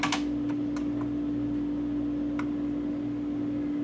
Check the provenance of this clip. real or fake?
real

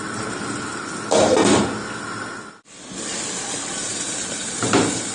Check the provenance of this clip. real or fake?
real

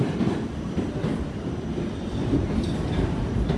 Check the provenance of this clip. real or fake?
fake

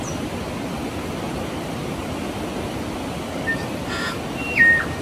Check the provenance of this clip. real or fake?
real